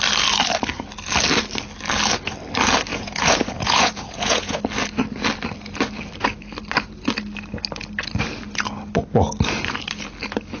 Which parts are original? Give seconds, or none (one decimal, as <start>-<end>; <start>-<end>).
0.0-2.9; 4.6-10.6